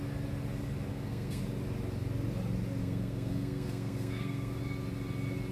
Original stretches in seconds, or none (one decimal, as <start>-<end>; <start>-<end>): 0.0-0.9; 1.4-2.8; 4.6-5.5